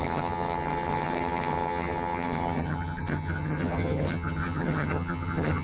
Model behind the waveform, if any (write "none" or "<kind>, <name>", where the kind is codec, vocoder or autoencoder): vocoder, HiFi-GAN